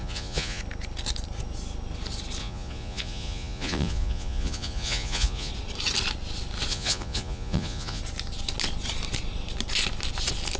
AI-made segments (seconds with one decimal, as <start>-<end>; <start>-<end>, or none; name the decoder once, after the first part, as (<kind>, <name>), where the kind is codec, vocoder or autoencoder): 0.0-0.6 (vocoder, Vocos); 2.4-5.5; 6.7-8.0